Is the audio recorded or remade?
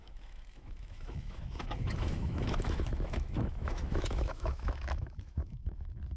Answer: remade